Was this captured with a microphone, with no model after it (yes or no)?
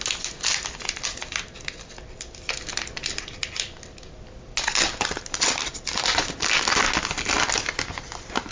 yes